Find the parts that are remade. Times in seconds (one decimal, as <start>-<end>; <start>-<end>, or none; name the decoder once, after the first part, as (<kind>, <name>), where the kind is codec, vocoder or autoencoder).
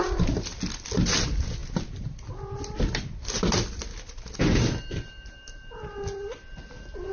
none